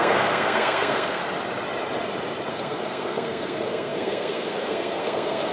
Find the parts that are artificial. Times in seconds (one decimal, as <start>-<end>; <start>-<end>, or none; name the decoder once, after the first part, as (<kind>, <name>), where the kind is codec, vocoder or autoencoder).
0.0-1.2 (codec, SNAC); 2.5-5.5